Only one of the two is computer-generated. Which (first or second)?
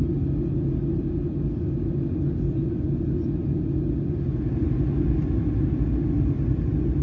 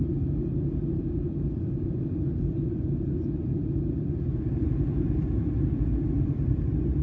second